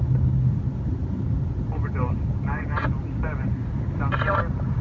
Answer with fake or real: real